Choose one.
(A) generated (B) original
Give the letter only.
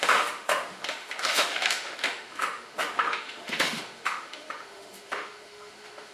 A